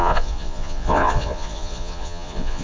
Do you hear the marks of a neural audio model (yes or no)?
yes